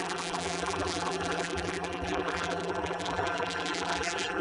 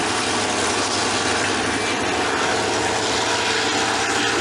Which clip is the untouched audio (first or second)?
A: second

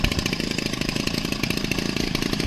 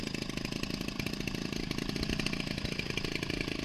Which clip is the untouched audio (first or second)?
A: second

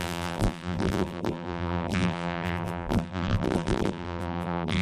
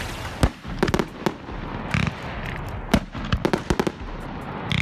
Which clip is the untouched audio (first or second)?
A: second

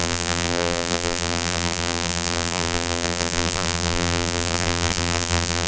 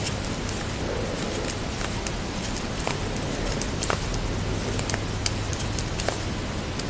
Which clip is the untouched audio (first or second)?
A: second